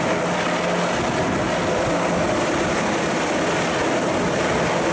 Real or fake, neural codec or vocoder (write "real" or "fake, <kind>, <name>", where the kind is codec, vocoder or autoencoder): real